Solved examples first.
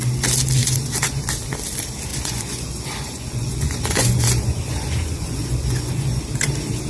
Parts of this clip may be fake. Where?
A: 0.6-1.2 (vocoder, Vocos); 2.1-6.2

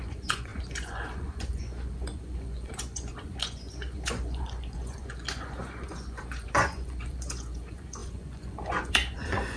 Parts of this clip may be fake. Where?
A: 0.0-9.6 (vocoder, Vocos)

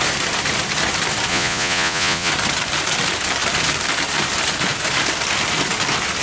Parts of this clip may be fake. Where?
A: 1.3-2.3 (vocoder, Vocos)

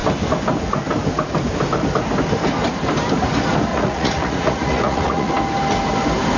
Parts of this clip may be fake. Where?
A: 3.7-5.3 (vocoder, Vocos)

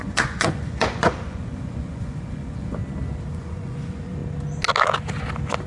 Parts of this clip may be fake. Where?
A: 0.0-2.8 (vocoder, Vocos); 3.3-4.2